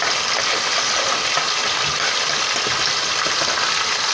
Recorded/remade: recorded